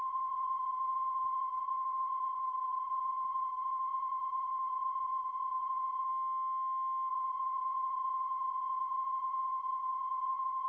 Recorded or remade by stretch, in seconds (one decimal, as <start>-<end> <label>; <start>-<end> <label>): 0.0-6.1 remade; 6.1-7.1 recorded; 7.1-10.7 remade